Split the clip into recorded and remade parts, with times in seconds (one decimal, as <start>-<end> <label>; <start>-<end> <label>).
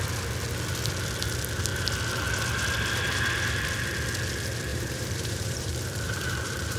0.0-4.7 recorded; 4.7-6.8 remade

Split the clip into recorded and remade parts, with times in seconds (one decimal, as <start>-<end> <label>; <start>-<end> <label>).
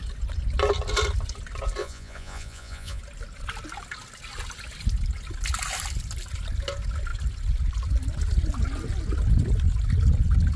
0.0-1.8 recorded; 1.8-3.0 remade; 3.0-10.6 recorded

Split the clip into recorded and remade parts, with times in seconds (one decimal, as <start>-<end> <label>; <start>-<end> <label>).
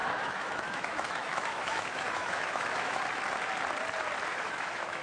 0.0-3.0 remade; 3.0-4.3 recorded; 4.3-5.0 remade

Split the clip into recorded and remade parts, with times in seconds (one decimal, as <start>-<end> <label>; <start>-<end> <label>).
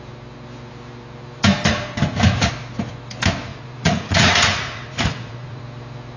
0.0-3.5 recorded; 3.5-5.6 remade; 5.6-6.2 recorded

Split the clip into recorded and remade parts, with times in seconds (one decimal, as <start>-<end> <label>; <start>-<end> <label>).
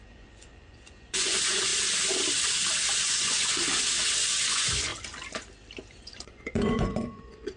0.0-1.7 remade; 1.7-3.0 recorded; 3.0-3.6 remade; 3.6-4.2 recorded; 4.2-4.9 remade; 4.9-5.9 recorded; 5.9-7.6 remade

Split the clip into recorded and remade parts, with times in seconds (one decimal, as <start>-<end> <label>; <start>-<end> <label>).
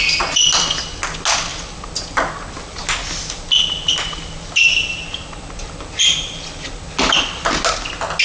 0.0-8.2 recorded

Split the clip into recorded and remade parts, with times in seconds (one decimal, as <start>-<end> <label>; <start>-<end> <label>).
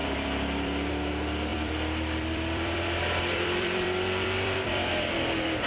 0.0-0.9 remade; 0.9-1.5 recorded; 1.5-4.9 remade; 4.9-5.7 recorded